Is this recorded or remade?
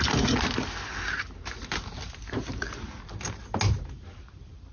recorded